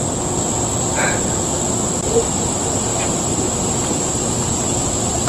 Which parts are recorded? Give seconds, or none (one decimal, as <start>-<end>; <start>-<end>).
0.0-2.9; 4.8-5.3

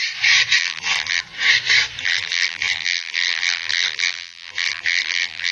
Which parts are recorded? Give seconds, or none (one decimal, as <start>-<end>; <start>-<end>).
0.0-0.6; 1.2-2.0

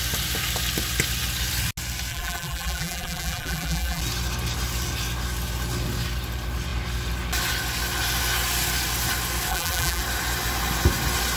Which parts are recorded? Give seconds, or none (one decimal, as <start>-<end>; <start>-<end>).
0.0-2.1; 4.0-9.5; 10.0-11.4

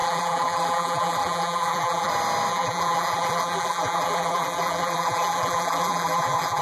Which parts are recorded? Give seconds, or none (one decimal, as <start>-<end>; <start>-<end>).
2.1-2.5

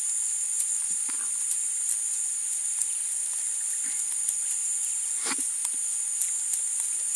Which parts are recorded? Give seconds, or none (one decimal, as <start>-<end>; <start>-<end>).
0.0-7.2

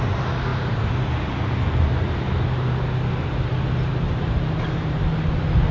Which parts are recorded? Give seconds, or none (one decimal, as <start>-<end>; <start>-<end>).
0.0-3.9; 5.0-5.7

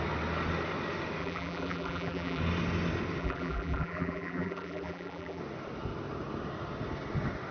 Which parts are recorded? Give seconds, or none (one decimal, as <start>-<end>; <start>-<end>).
0.0-1.2; 2.4-3.2; 5.4-7.5